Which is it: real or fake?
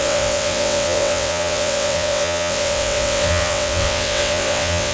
fake